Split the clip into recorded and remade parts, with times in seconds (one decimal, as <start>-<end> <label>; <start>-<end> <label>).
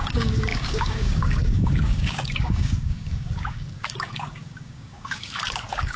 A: 0.0-6.0 remade